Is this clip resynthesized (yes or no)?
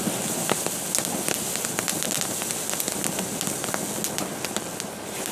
no